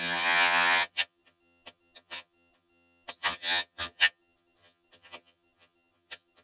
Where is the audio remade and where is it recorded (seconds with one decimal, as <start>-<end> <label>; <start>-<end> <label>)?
0.0-6.4 remade

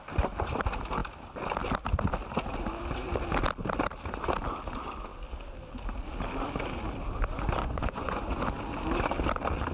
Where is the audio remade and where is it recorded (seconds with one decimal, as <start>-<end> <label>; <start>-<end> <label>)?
0.0-7.6 recorded; 7.6-8.4 remade; 8.4-9.7 recorded